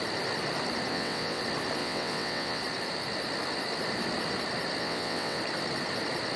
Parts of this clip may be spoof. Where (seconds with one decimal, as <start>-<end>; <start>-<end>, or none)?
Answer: 0.9-1.4; 1.8-2.6; 4.8-5.4

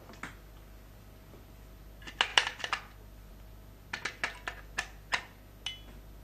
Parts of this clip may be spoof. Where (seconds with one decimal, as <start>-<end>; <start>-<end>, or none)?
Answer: none